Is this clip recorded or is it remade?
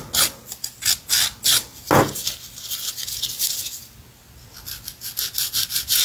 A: recorded